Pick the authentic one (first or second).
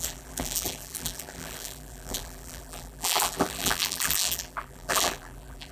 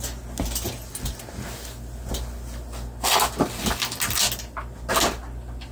second